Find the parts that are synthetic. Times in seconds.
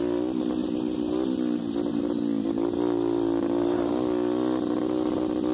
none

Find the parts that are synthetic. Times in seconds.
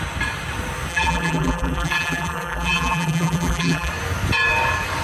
0.9-3.9 (vocoder, BigVGAN v2)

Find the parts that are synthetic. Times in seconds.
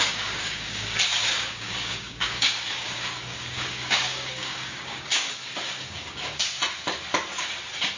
0.0-6.6 (codec, DAC)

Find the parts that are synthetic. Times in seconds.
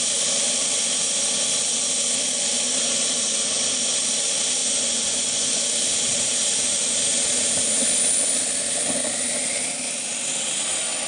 4.6-5.6 (vocoder, Vocos)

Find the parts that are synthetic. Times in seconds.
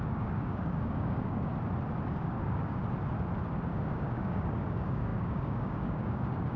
0.0-1.5 (codec, DAC); 2.1-2.8; 3.7-6.6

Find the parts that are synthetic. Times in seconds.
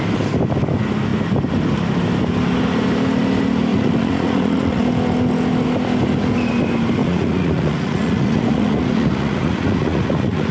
3.7-4.8 (vocoder, Vocos); 7.0-10.5